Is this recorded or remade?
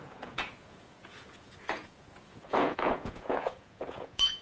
remade